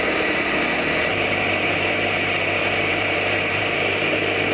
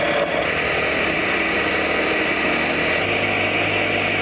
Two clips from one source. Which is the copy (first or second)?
first